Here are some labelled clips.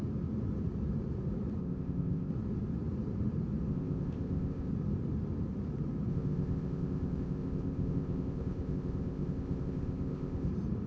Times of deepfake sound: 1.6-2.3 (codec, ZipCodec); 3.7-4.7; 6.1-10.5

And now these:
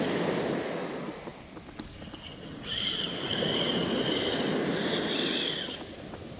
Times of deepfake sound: none

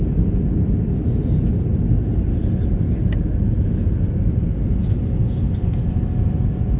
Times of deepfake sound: none

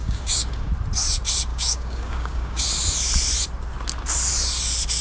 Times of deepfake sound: 0.0-0.7 (codec, DAC); 1.5-2.6

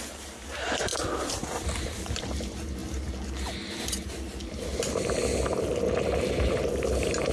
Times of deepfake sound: none

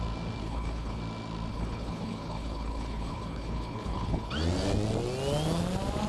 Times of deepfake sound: 0.4-1.0 (codec, HILCodec); 1.5-4.3